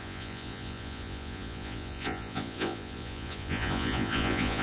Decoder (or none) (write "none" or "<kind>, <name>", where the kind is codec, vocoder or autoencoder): vocoder, Vocos